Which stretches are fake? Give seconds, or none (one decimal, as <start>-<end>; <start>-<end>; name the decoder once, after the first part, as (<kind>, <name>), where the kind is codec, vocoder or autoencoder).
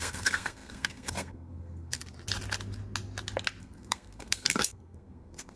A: 0.0-2.0 (codec, SNAC); 3.6-5.6